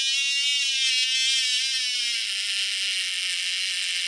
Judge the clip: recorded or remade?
recorded